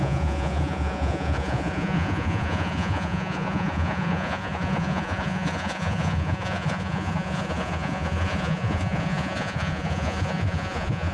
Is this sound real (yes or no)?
no